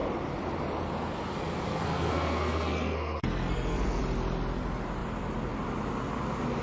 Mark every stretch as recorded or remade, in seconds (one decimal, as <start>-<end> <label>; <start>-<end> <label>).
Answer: 0.0-1.7 recorded; 1.7-4.0 remade; 4.0-6.6 recorded